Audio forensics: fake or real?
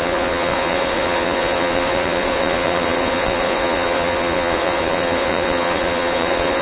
fake